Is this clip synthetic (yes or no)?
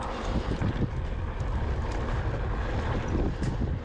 no